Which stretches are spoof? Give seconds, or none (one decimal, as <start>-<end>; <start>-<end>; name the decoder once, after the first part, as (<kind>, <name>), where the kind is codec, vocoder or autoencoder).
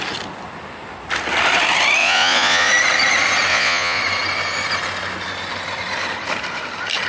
2.0-2.7 (vocoder, Vocos); 3.5-4.0